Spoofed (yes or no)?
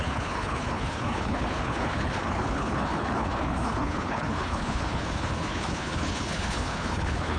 yes